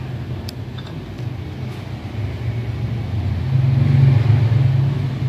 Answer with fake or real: real